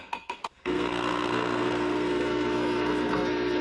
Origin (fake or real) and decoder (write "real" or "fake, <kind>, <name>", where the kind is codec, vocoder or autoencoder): fake, codec, SNAC